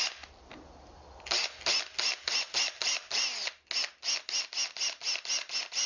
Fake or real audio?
real